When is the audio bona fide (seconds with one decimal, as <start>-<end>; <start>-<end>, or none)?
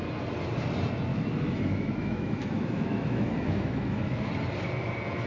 0.0-1.1; 4.3-5.3